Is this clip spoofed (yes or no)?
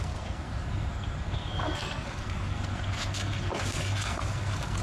yes